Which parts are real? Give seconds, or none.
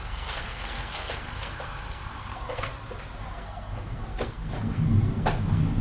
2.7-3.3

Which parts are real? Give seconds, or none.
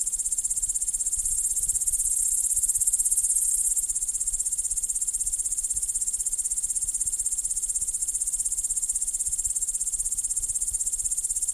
0.0-11.5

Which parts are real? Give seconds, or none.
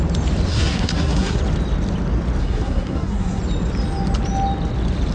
0.0-0.5; 1.4-2.4; 3.4-5.1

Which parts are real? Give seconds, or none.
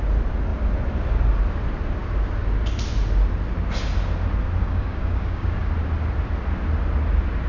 0.0-4.6; 5.7-7.5